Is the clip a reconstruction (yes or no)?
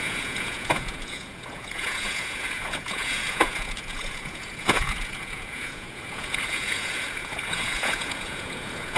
yes